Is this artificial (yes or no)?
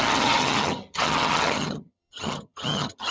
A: yes